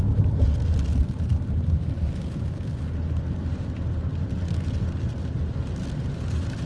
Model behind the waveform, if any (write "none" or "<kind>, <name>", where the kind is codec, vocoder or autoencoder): none